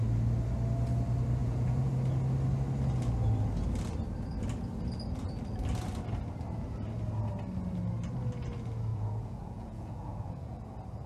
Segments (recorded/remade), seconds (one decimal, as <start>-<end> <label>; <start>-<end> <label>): 0.0-1.4 recorded; 1.4-1.9 remade; 1.9-8.9 recorded; 8.9-10.6 remade; 10.6-11.1 recorded